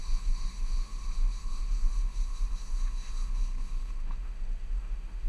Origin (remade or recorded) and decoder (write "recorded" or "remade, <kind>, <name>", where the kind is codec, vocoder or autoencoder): remade, autoencoder, DAC-VAE